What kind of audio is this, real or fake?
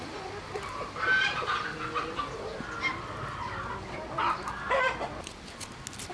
real